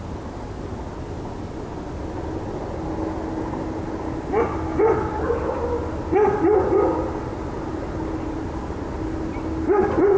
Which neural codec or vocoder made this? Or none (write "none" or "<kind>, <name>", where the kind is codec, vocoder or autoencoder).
none